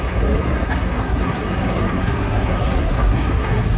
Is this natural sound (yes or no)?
no